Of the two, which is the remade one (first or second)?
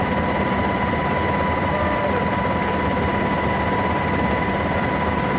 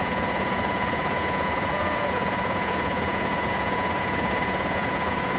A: second